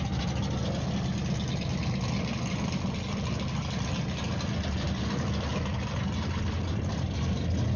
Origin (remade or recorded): recorded